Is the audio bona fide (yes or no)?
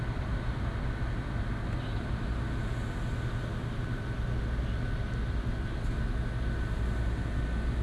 yes